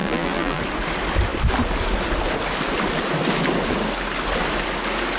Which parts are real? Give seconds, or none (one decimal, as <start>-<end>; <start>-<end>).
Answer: 0.6-5.2